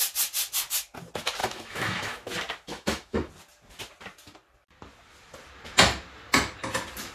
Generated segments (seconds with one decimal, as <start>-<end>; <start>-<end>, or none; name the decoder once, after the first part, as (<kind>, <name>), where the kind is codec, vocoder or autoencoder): 1.4-2.3 (autoencoder, DAC-VAE); 2.7-3.3